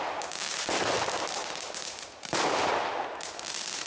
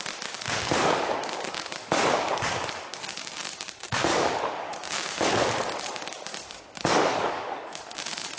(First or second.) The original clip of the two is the first